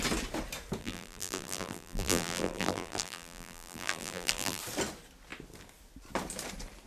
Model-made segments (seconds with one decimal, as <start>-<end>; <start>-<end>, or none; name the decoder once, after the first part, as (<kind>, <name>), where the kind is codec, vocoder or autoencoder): 0.8-4.6 (vocoder, BigVGAN v2)